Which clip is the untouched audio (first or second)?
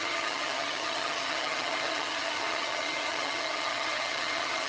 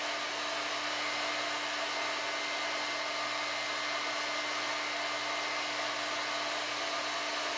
second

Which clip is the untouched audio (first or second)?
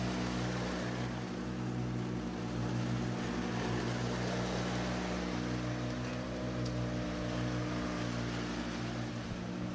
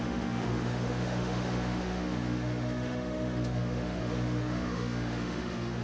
first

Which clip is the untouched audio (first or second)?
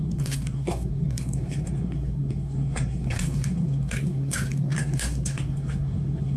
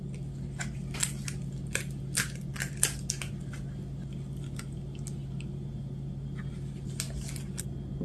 second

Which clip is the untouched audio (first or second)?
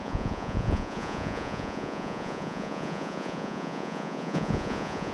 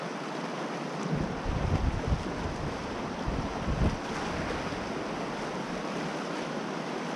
second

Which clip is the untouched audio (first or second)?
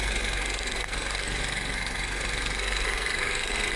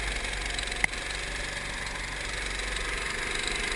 second